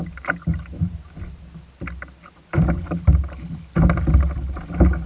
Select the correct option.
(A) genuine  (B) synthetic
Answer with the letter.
A